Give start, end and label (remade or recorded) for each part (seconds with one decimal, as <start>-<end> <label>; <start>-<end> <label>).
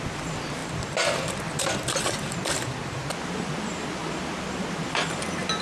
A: 0.0-5.6 recorded